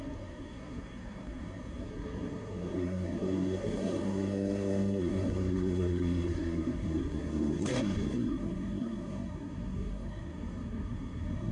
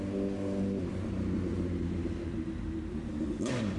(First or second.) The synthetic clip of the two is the first